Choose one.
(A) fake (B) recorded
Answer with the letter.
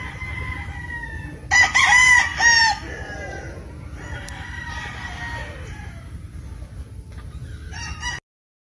B